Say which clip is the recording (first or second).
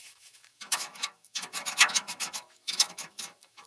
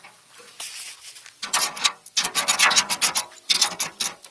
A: second